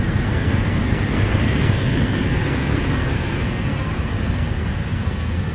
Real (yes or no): no